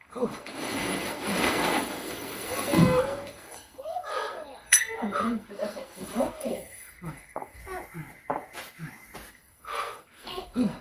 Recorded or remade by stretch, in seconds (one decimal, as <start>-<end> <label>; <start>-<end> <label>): 0.0-7.6 remade; 7.6-9.3 recorded; 9.3-10.8 remade